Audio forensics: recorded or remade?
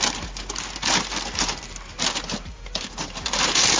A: recorded